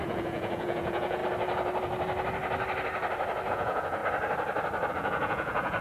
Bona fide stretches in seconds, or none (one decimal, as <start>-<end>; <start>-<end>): 1.2-3.5; 4.0-4.9